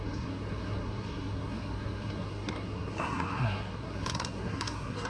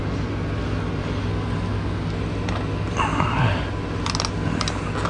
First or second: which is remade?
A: first